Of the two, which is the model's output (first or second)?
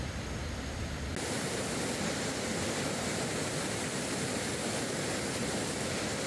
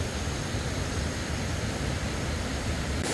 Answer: second